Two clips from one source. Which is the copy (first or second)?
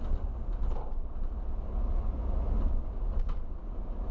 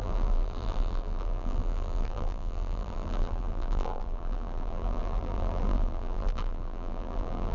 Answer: second